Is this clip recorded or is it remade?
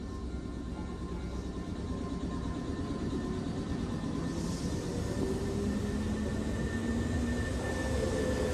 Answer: recorded